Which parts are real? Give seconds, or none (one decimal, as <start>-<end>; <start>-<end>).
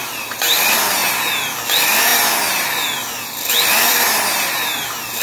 1.0-1.7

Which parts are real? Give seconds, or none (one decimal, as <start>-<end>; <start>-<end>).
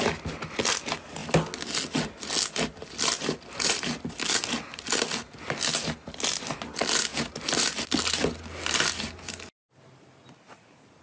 0.0-11.0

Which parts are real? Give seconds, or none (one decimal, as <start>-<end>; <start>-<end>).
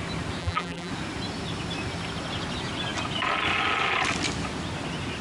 0.0-0.4; 0.9-5.2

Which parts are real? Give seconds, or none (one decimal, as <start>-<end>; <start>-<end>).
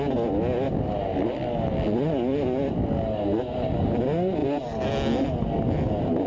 0.0-6.3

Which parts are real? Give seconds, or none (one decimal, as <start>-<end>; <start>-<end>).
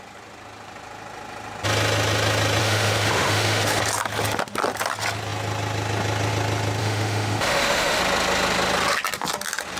0.0-2.6; 3.8-6.8; 8.0-9.8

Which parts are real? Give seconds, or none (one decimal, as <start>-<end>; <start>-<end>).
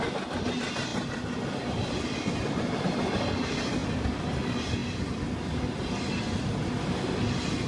0.0-7.7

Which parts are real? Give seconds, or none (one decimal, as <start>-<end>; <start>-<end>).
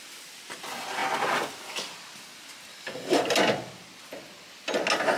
0.0-2.7; 3.2-5.2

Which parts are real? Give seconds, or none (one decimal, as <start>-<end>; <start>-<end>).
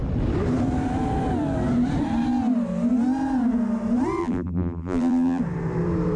0.0-4.2; 5.4-6.2